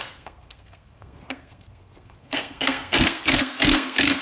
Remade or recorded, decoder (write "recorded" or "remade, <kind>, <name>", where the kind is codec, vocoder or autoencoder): remade, codec, SNAC